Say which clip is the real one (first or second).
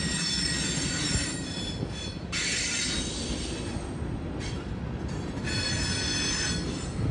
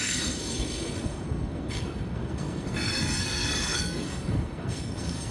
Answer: first